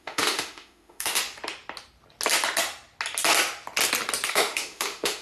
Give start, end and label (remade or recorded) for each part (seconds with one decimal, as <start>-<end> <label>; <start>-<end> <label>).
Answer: 0.0-1.2 remade; 1.2-4.3 recorded; 4.3-5.2 remade